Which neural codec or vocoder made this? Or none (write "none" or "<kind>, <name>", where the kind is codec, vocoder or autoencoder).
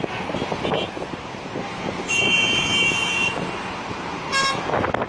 none